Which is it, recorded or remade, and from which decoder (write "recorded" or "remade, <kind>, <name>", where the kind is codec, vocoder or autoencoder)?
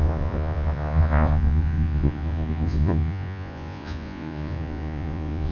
remade, vocoder, Vocos